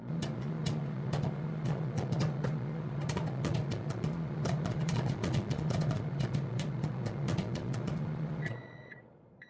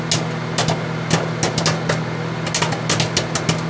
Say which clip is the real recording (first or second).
second